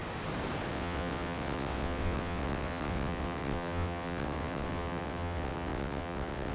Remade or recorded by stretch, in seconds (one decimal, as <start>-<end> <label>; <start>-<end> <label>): 0.0-0.7 recorded; 0.7-6.5 remade